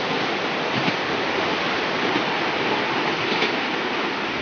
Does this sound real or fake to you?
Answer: real